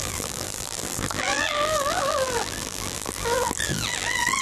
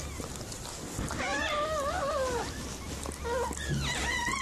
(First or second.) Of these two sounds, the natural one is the second